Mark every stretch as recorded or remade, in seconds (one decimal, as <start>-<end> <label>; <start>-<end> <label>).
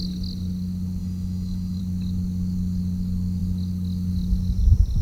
0.0-1.0 recorded; 1.0-1.8 remade; 1.8-5.0 recorded